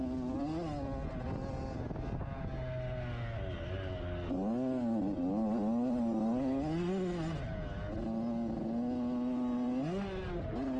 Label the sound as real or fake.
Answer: real